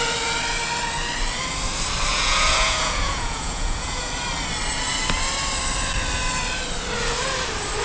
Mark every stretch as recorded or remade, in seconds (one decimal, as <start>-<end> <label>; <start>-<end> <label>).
0.0-2.1 recorded; 2.1-4.1 remade; 4.1-7.8 recorded